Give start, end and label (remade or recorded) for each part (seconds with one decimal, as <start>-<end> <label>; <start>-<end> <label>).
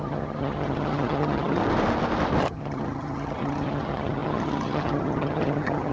0.0-1.6 remade; 1.6-2.4 recorded; 2.4-5.9 remade